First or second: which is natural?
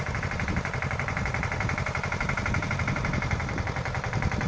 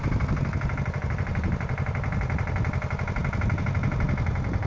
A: second